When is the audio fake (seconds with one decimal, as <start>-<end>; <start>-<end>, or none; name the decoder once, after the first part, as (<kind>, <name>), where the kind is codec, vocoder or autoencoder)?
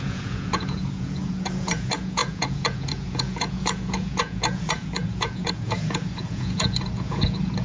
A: 0.0-7.6 (vocoder, Vocos)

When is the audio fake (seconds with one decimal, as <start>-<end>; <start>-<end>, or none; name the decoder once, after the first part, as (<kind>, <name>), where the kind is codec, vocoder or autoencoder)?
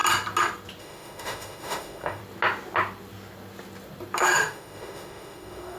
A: 0.8-2.2 (autoencoder, DAC-VAE); 4.2-5.8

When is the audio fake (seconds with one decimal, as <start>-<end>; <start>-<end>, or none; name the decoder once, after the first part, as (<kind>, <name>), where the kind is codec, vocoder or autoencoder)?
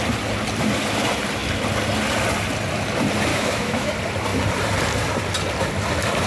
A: 3.3-3.9 (autoencoder, DAC-VAE)